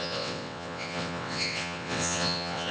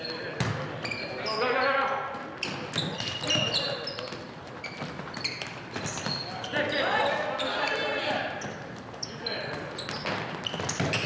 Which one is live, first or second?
second